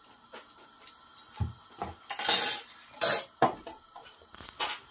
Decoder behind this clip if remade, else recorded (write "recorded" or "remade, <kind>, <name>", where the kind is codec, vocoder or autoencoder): recorded